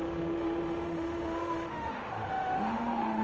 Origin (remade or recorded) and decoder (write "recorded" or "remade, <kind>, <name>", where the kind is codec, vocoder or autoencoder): remade, autoencoder, DAC-VAE